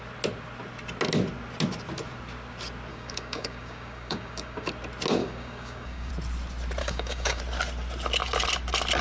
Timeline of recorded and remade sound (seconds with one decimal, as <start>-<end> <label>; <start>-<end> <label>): 0.0-2.9 recorded; 2.9-4.7 remade; 4.7-5.2 recorded; 5.2-6.1 remade; 6.1-6.8 recorded; 6.8-7.4 remade; 7.4-9.0 recorded